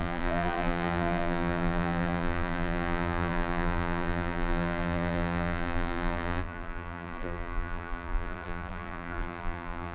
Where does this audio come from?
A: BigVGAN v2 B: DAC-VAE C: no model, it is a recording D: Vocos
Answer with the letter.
A